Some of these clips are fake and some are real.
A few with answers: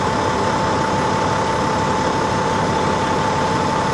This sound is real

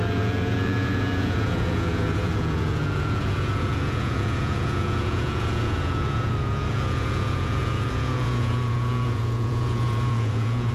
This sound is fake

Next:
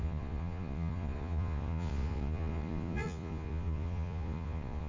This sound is fake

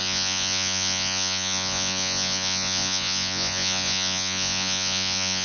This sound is fake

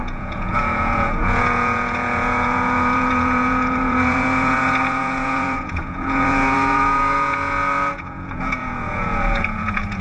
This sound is fake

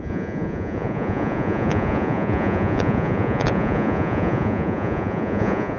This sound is fake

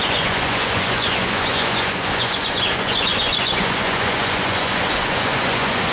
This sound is fake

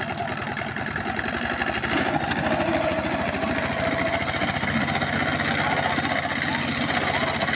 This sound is real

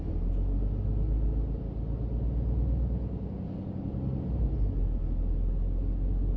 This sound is real